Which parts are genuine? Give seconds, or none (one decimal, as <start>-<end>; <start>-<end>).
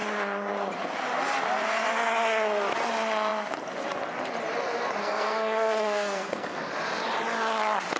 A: 0.0-5.0; 6.7-8.0